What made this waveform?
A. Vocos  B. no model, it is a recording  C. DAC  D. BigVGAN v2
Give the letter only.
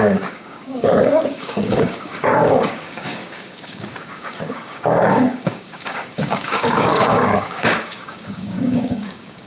C